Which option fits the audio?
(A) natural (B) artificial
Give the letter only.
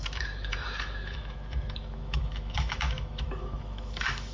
B